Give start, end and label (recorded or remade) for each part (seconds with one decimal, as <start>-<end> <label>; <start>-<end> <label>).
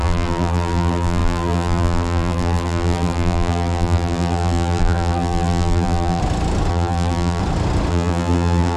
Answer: 0.0-6.2 remade; 6.2-6.7 recorded; 6.7-7.4 remade; 7.4-7.9 recorded; 7.9-8.8 remade